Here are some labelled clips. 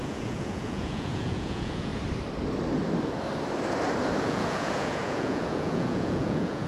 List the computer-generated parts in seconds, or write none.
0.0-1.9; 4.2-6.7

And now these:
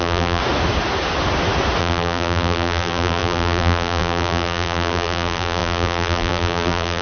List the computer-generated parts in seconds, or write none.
0.0-0.4; 1.8-7.0

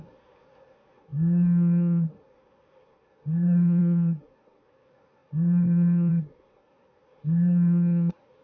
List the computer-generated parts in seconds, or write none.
0.0-8.4